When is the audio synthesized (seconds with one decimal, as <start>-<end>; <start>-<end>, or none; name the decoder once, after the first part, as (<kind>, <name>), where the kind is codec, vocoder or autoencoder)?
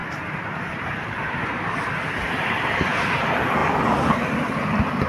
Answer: 0.0-3.1 (vocoder, BigVGAN v2)